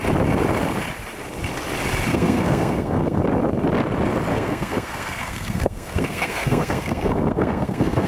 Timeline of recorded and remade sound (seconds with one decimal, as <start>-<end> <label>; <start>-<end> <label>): 0.0-2.1 recorded; 2.1-3.2 remade; 3.2-4.3 recorded; 4.3-8.1 remade